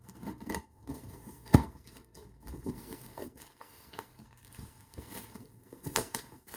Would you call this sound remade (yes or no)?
yes